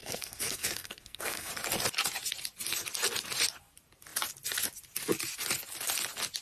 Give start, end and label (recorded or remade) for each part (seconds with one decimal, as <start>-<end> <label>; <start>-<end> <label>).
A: 0.0-1.5 remade; 1.5-6.4 recorded